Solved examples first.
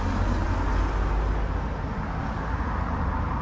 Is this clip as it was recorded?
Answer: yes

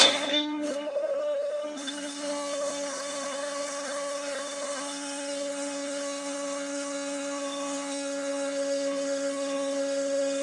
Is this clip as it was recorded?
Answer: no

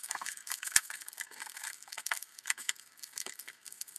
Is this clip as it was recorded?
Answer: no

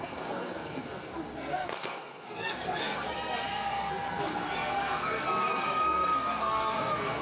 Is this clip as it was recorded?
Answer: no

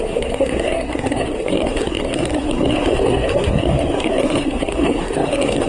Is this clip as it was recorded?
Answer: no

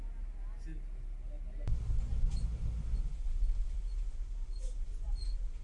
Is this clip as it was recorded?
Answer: yes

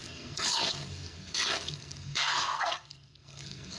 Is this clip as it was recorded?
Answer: no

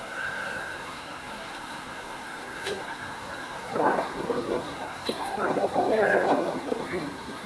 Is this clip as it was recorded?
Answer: no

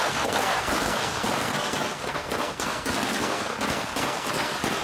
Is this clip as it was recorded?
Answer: no